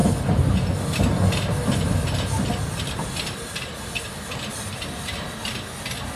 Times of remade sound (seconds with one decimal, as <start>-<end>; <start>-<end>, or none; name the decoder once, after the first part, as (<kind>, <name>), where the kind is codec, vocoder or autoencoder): none

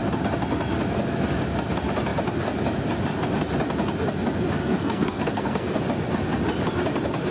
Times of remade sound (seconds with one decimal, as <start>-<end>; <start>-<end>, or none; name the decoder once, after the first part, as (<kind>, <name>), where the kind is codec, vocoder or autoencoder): 4.6-5.8 (codec, SNAC)

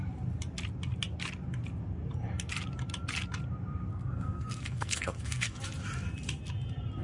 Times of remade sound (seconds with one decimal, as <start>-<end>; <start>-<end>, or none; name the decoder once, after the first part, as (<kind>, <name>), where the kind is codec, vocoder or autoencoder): 3.9-5.6 (codec, SNAC)

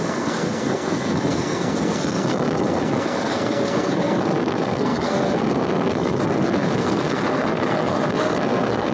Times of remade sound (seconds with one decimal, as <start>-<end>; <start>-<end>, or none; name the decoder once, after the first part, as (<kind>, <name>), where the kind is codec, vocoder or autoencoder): 0.0-8.9 (codec, SNAC)

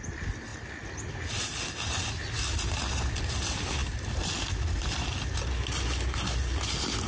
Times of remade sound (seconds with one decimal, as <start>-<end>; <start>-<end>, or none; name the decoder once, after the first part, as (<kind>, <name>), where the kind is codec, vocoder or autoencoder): none

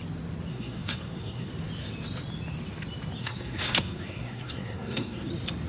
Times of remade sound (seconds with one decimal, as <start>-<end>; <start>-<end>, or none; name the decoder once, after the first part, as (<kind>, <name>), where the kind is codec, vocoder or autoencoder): 0.5-1.5 (codec, SNAC); 3.2-5.3

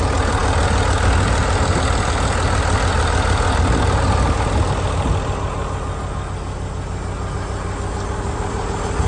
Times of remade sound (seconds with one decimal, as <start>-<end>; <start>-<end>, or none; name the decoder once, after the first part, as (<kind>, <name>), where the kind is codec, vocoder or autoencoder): none